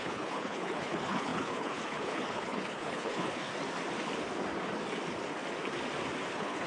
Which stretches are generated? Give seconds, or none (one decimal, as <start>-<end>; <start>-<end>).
0.0-3.5; 6.3-6.7